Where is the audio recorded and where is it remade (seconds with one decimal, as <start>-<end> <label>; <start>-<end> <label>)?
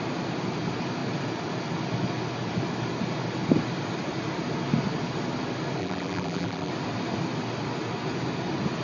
0.0-5.8 recorded; 5.8-6.7 remade; 6.7-8.8 recorded